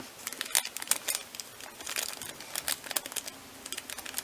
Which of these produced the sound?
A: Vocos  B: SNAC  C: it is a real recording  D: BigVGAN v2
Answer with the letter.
C